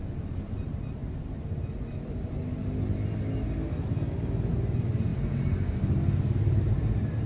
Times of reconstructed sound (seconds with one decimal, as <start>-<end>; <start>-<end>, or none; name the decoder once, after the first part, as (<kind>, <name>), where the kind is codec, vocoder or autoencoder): none